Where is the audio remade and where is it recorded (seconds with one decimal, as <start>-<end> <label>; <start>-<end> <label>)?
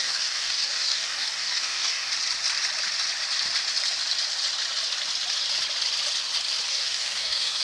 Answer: 0.0-2.1 remade; 2.1-6.7 recorded; 6.7-7.6 remade